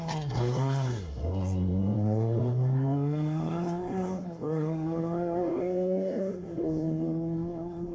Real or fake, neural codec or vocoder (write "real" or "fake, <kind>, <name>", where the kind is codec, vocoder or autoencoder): fake, codec, SNAC